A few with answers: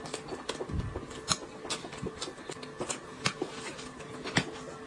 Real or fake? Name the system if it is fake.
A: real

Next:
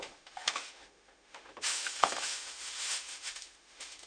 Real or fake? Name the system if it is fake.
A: fake, autoencoder, DAC-VAE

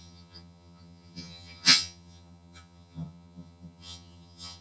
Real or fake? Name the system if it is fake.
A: fake, vocoder, HiFi-GAN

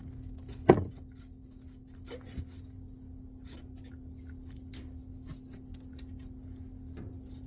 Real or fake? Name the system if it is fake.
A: real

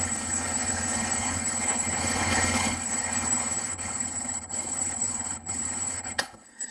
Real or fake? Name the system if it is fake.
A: fake, codec, HILCodec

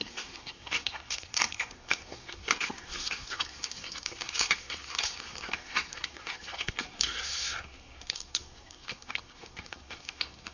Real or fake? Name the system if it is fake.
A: fake, codec, SNAC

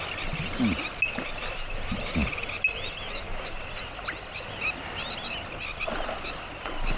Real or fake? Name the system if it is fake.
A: real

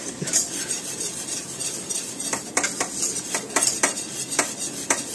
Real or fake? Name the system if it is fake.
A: fake, vocoder, BigVGAN v2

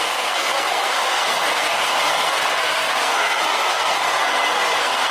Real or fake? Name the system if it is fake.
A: fake, codec, SNAC